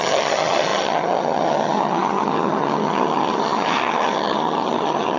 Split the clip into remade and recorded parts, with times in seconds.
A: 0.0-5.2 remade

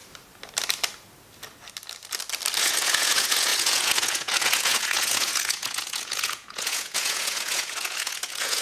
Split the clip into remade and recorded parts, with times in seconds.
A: 0.0-2.6 recorded; 2.6-8.6 remade

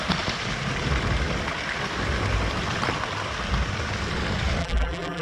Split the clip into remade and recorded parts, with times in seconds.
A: 0.0-4.6 recorded; 4.6-5.2 remade

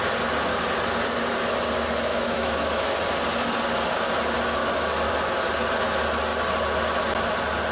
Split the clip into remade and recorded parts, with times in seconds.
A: 0.0-2.1 recorded; 2.1-2.9 remade; 2.9-4.6 recorded; 4.6-5.1 remade; 5.1-7.7 recorded

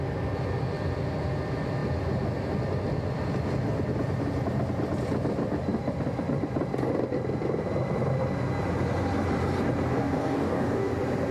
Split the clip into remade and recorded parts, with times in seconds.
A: 0.0-9.9 recorded; 9.9-10.9 remade; 10.9-11.3 recorded

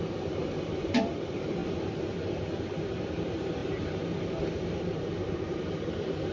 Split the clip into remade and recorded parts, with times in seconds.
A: 0.0-6.3 remade